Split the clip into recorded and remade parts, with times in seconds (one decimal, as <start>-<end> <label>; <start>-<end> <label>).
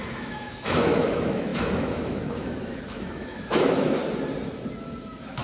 0.0-4.0 remade; 4.0-5.0 recorded; 5.0-5.4 remade